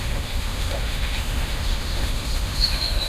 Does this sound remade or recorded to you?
remade